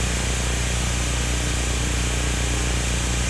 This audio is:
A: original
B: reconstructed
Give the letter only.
A